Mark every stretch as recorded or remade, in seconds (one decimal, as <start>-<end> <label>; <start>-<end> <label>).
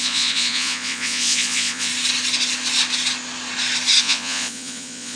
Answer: 0.0-1.9 remade; 1.9-4.0 recorded; 4.0-5.2 remade